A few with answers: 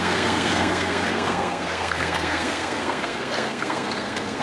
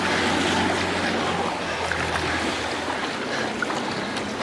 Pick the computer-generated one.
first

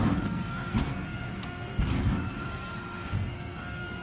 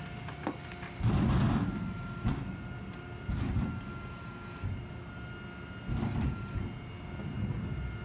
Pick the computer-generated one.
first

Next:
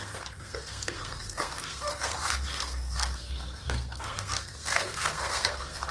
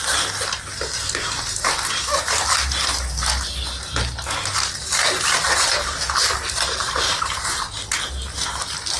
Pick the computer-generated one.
first